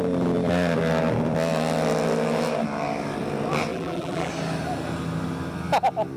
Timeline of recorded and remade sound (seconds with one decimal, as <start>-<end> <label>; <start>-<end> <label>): 0.0-3.7 recorded; 3.7-4.3 remade; 4.3-6.2 recorded